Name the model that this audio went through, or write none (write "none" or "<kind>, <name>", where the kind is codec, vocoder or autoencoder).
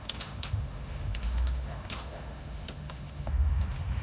autoencoder, DAC-VAE